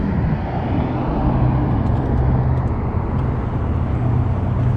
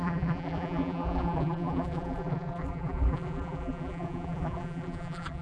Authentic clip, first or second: first